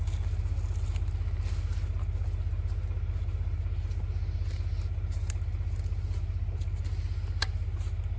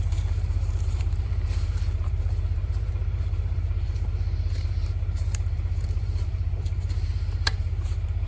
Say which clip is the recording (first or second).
first